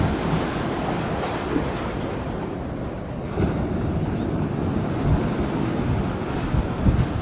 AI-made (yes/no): no